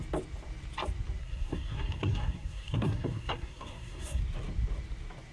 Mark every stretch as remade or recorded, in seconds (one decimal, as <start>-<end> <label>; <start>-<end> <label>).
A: 0.0-1.2 recorded; 1.2-4.2 remade; 4.2-5.3 recorded